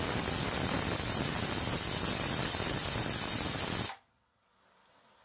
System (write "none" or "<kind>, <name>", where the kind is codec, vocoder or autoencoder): none